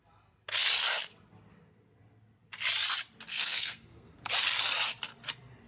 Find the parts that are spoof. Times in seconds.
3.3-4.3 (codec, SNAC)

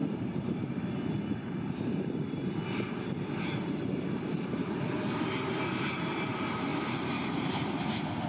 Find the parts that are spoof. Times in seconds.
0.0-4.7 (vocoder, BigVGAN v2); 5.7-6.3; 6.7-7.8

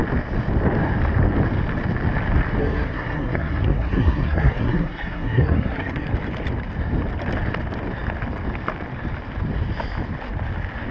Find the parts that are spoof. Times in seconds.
2.6-6.1 (codec, SNAC)

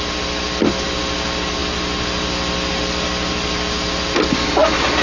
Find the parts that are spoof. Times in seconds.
none

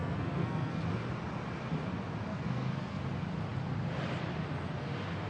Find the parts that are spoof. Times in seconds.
0.0-0.8 (codec, SNAC); 2.3-3.0

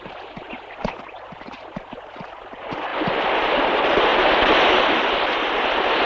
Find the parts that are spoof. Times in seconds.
none

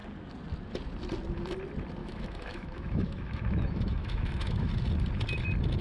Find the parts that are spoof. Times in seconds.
2.0-4.7 (autoencoder, DAC-VAE)

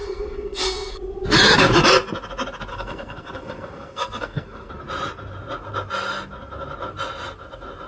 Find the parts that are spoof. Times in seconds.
0.0-1.0 (codec, SNAC); 2.7-4.7